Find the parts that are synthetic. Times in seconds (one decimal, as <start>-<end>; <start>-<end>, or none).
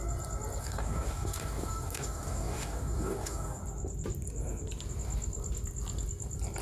0.6-3.6